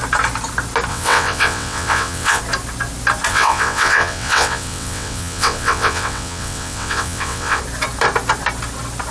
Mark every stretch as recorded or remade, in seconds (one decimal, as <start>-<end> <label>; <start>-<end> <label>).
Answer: 0.0-0.9 recorded; 0.9-2.4 remade; 2.4-3.3 recorded; 3.3-7.6 remade; 7.6-9.1 recorded